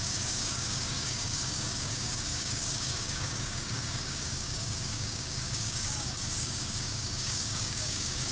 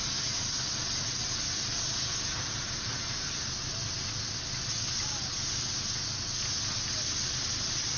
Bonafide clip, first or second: second